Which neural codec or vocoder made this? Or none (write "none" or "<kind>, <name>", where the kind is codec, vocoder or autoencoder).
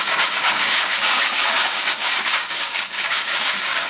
codec, DAC